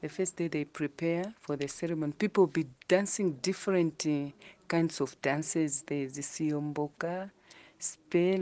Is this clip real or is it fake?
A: real